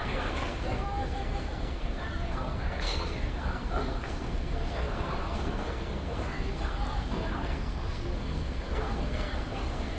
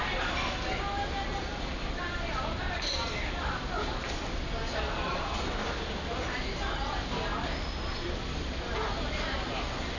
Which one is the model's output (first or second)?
first